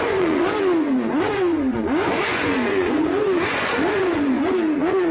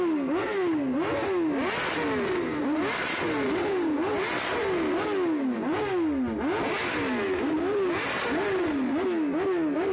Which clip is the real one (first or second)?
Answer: second